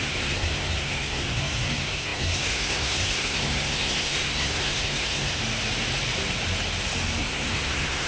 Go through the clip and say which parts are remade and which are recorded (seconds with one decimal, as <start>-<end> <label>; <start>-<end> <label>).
0.0-5.4 remade; 5.4-7.2 recorded; 7.2-8.1 remade